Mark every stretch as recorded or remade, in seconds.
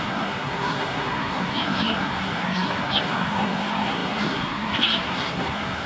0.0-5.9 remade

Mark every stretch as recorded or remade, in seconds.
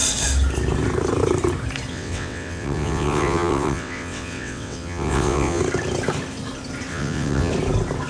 0.0-1.9 recorded; 1.9-5.6 remade; 5.6-6.9 recorded; 6.9-7.5 remade; 7.5-8.1 recorded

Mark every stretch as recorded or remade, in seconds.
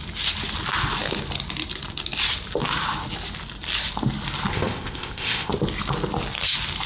0.0-4.5 recorded; 4.5-5.5 remade; 5.5-6.9 recorded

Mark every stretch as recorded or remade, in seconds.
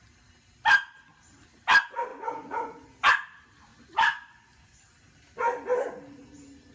0.0-2.1 recorded; 2.1-2.8 remade; 2.8-3.7 recorded; 3.7-4.8 remade; 4.8-6.7 recorded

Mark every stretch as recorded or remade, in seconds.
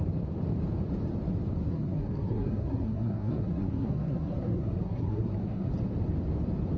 0.0-1.6 recorded; 1.6-5.7 remade; 5.7-6.8 recorded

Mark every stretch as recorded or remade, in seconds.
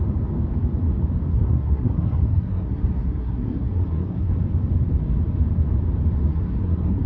0.0-1.3 recorded; 1.3-4.3 remade; 4.3-6.3 recorded; 6.3-7.1 remade